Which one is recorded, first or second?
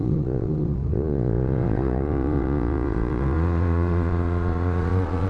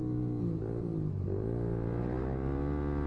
second